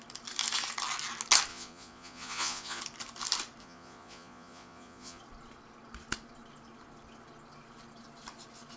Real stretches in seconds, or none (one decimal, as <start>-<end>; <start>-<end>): 0.0-1.5; 2.8-3.6; 5.2-8.8